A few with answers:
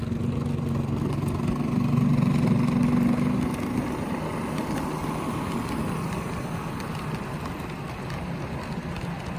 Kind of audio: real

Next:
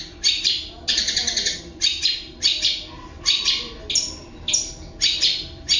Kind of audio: real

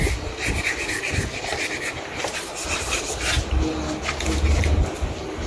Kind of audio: real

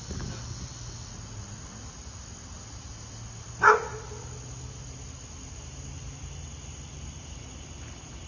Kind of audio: real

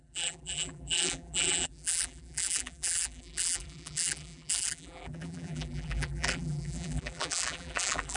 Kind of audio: fake